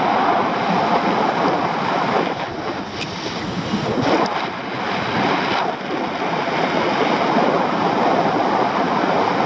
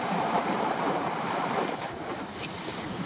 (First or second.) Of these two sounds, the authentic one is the first